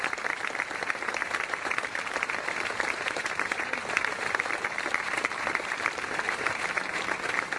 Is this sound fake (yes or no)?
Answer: yes